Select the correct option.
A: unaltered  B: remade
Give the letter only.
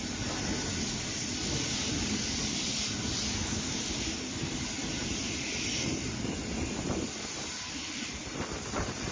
B